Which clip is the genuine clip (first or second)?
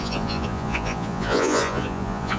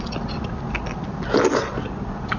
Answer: second